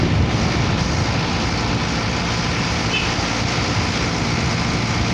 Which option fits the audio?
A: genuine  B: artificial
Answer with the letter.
A